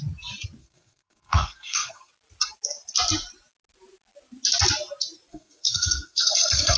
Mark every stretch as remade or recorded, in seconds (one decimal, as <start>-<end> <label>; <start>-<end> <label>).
0.0-0.6 recorded; 0.6-2.1 remade; 2.1-5.3 recorded; 5.3-6.8 remade